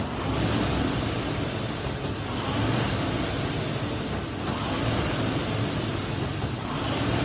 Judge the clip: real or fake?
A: real